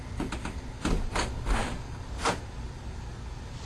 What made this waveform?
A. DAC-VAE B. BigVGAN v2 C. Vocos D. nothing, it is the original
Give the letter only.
D